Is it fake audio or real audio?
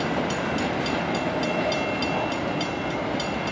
real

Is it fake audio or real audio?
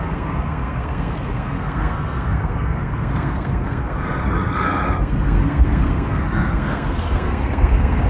fake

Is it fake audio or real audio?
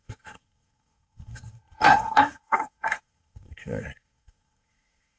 fake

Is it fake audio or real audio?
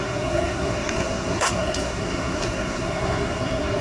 fake